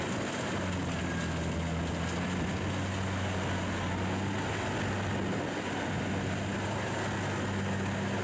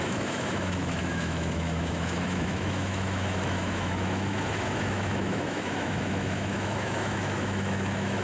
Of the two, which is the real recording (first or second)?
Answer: first